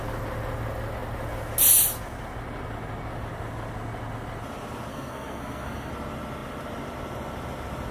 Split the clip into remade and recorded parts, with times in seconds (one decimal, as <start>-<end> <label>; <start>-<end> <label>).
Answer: 0.0-4.9 recorded; 4.9-5.9 remade; 5.9-7.9 recorded